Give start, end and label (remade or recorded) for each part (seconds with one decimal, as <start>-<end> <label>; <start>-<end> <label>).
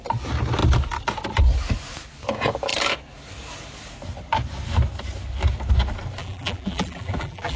0.0-6.2 recorded; 6.2-7.6 remade